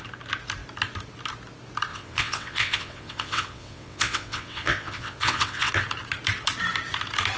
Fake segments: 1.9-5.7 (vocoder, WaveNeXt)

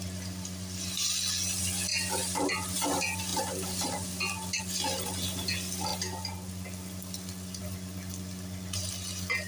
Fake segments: 1.9-2.5 (vocoder, BigVGAN v2); 3.3-4.6